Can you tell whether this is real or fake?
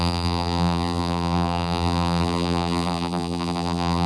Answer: fake